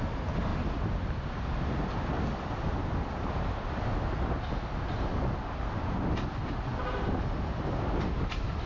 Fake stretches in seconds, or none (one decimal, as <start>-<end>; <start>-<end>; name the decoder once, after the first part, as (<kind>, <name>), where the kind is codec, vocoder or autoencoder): none

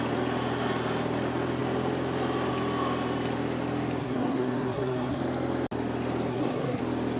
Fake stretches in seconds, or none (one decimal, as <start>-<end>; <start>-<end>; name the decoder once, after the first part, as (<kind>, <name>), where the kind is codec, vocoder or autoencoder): 4.0-5.2 (codec, SNAC); 6.3-6.8

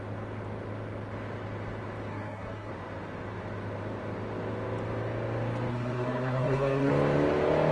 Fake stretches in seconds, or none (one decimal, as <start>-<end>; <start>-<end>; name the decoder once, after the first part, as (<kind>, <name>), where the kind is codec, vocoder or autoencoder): 2.1-2.7 (codec, SNAC); 5.7-6.9

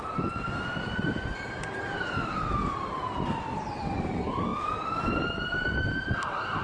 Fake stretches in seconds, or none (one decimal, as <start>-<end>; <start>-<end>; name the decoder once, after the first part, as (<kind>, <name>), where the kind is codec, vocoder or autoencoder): none